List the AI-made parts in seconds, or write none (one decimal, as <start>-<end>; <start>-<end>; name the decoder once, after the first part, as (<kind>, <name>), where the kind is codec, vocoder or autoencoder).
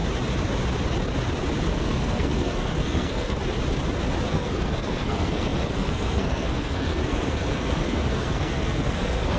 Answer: 1.7-3.4 (codec, SNAC); 4.3-9.4